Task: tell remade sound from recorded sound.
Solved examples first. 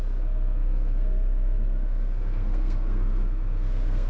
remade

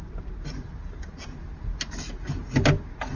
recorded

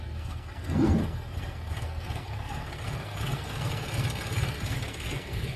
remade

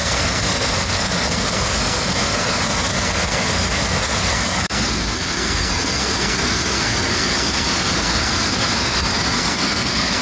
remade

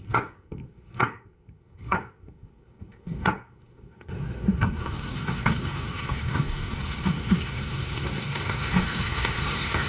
remade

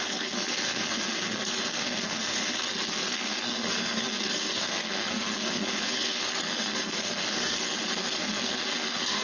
remade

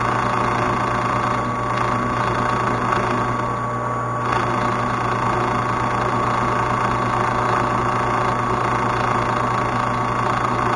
recorded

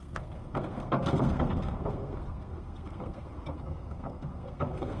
remade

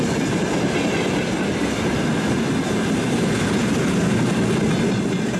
recorded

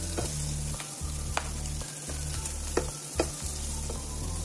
recorded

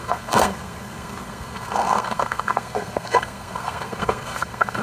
remade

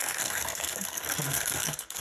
remade